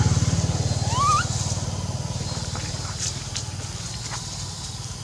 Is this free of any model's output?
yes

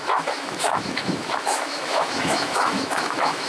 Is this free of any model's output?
no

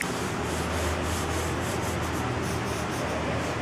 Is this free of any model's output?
yes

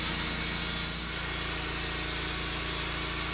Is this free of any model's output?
yes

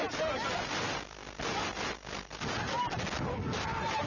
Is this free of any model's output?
yes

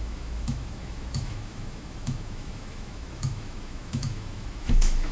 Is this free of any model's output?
no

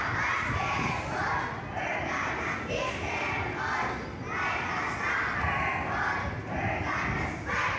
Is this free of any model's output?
yes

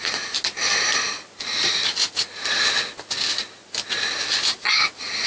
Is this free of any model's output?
yes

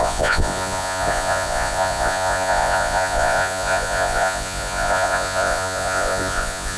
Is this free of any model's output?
no